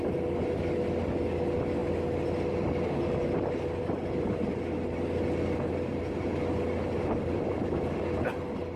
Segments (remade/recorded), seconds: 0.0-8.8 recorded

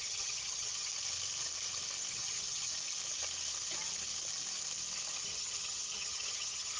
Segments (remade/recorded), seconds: 0.0-0.9 remade; 0.9-2.1 recorded; 2.1-2.7 remade; 2.7-5.2 recorded; 5.2-6.8 remade